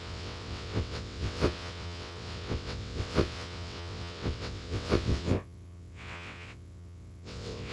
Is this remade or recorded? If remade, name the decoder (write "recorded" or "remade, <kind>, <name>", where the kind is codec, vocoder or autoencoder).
remade, vocoder, WaveNeXt